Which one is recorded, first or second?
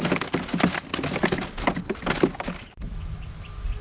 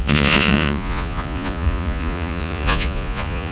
first